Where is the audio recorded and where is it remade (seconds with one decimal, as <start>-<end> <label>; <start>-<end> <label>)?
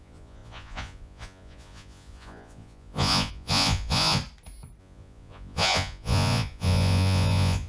0.0-4.2 remade; 4.2-4.8 recorded; 4.8-7.7 remade